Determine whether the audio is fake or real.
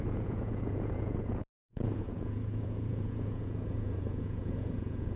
fake